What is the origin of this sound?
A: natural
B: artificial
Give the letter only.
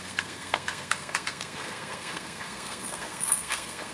B